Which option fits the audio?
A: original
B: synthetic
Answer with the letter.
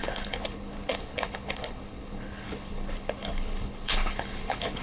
B